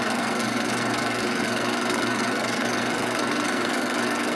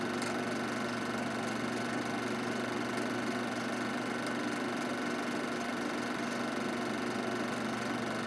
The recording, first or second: second